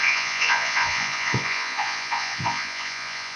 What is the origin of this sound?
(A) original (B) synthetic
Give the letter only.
B